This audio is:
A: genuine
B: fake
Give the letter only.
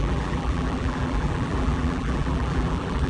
B